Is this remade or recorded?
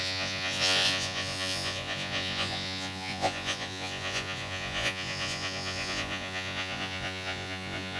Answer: remade